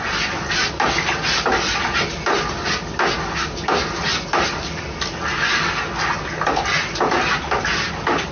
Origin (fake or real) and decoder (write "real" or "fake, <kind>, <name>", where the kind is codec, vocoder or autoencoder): real